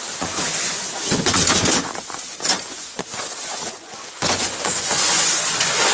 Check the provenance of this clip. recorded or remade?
remade